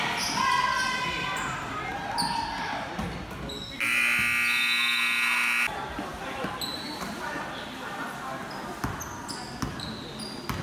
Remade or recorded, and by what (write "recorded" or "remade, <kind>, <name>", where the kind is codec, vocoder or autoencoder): recorded